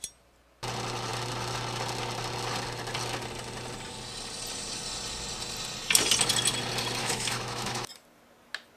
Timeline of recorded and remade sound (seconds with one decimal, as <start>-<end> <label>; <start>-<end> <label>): 0.0-7.0 recorded; 7.0-7.9 remade; 7.9-8.8 recorded